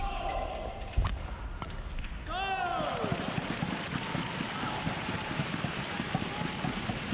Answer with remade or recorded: recorded